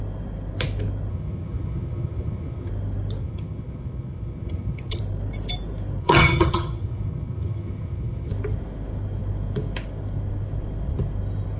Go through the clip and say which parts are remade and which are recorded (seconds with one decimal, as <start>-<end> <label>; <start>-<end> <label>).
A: 0.0-1.1 recorded; 1.1-2.7 remade; 2.7-3.2 recorded; 3.2-5.0 remade; 5.0-6.0 recorded; 6.0-8.3 remade; 8.3-11.6 recorded